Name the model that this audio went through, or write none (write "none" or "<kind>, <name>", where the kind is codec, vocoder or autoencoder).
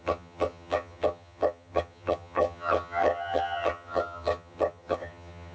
vocoder, HiFi-GAN